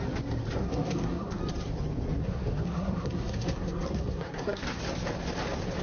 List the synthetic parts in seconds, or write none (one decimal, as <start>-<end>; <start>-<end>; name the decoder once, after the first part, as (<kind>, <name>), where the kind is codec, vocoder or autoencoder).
0.7-1.4 (codec, SNAC); 2.2-4.8